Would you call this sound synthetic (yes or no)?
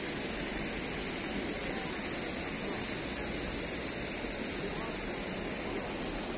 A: no